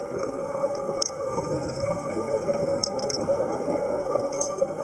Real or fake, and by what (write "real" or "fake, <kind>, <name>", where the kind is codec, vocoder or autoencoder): fake, codec, SNAC